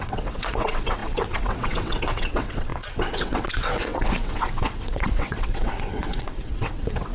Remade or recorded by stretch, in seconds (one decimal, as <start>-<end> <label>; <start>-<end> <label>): 0.0-7.1 remade